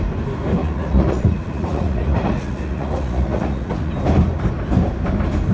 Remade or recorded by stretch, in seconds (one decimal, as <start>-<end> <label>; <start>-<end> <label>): 0.0-0.6 recorded; 0.6-3.9 remade; 3.9-5.5 recorded